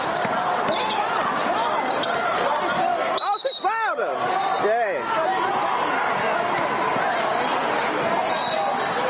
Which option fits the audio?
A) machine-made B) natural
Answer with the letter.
B